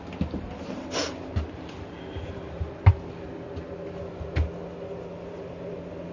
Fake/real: real